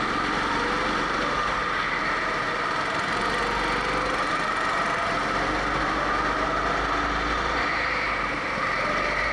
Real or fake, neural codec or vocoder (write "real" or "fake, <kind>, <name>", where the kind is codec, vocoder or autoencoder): real